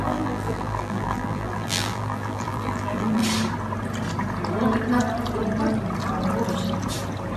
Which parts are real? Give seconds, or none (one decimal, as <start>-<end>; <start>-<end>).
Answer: 3.2-7.4